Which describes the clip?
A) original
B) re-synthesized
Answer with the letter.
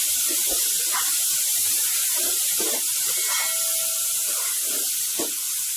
A